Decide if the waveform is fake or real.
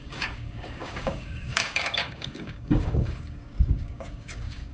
fake